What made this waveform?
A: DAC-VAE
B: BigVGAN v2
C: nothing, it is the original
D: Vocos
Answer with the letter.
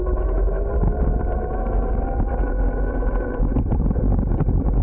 C